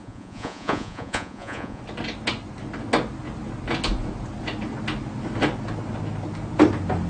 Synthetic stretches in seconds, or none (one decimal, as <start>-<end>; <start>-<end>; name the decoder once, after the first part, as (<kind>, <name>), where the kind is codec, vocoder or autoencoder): 0.0-1.8 (vocoder, Vocos)